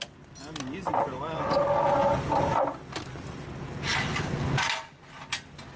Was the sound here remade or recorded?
recorded